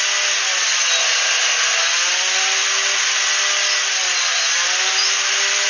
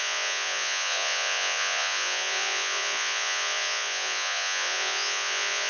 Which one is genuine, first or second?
first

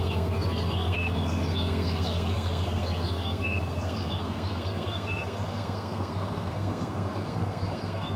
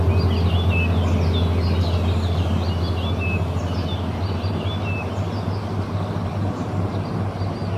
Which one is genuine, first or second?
second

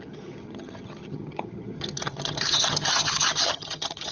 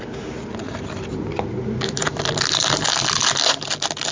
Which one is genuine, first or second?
second